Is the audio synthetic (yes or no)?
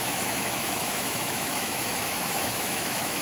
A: yes